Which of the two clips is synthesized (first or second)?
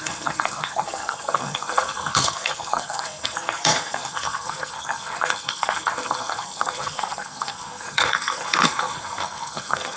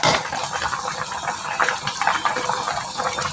first